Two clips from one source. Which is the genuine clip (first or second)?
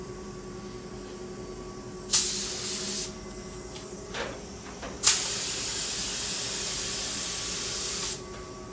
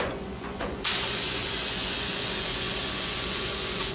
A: first